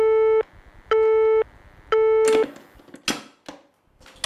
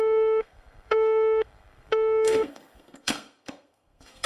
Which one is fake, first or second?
second